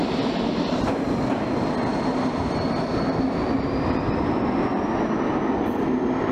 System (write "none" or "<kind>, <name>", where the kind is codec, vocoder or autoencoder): none